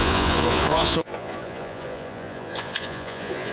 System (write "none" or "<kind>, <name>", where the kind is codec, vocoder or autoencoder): vocoder, Vocos